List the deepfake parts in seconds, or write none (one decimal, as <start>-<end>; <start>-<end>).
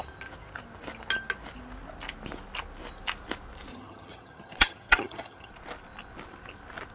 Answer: 3.7-5.5